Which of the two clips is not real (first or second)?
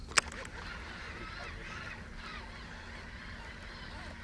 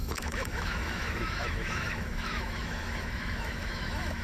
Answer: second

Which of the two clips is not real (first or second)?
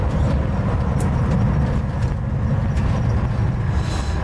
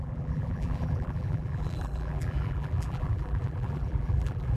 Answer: second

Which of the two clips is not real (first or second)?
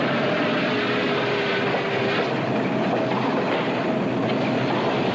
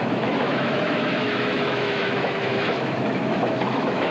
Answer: second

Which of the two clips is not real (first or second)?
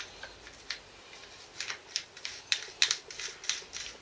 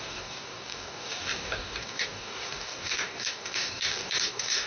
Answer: second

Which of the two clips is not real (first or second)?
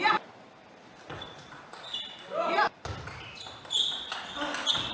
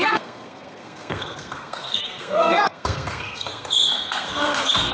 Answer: second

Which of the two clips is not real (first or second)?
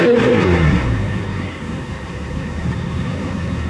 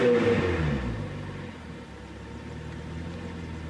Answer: first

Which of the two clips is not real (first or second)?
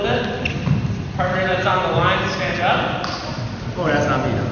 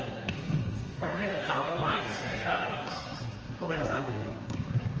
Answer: second